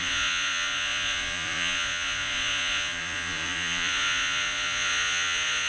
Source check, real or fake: fake